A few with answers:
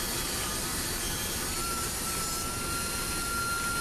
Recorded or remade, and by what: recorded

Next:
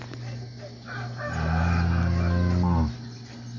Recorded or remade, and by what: recorded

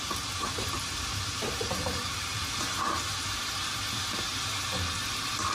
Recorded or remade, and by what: remade, vocoder, BigVGAN v2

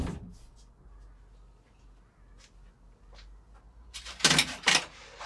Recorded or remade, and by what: recorded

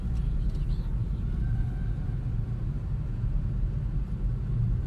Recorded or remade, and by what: recorded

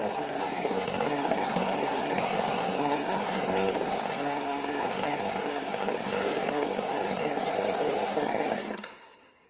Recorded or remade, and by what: remade, codec, SNAC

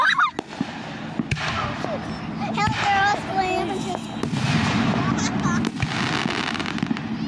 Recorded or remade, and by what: recorded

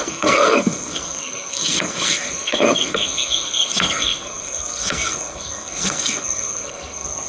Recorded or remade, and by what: remade, codec, SNAC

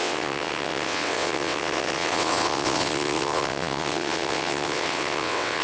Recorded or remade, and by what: remade, vocoder, WaveNeXt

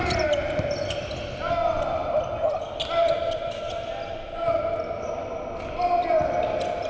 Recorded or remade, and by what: recorded